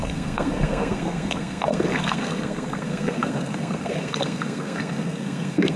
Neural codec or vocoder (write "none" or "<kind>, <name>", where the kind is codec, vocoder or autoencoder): codec, SNAC